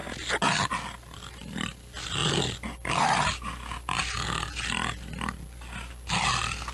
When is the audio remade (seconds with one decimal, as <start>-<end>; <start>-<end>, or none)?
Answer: 2.2-4.0

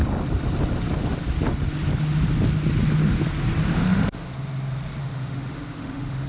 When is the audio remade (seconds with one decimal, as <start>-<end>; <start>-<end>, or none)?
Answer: 3.8-4.3; 5.0-6.3

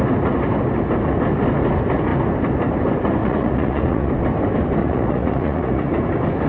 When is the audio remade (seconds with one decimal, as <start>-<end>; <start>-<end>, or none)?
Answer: 3.2-4.1; 4.8-5.9

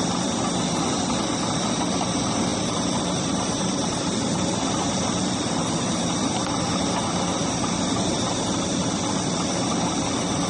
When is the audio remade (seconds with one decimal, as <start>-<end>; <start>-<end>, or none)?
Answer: 2.5-6.4; 7.4-9.7

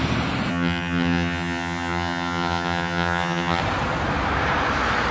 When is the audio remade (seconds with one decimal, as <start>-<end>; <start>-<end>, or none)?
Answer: 0.5-3.6

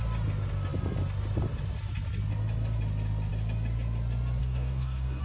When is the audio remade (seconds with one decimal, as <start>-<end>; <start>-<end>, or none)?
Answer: 4.4-5.2

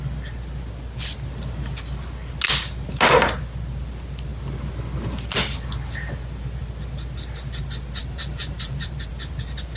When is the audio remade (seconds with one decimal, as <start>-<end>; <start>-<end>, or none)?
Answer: 8.0-9.1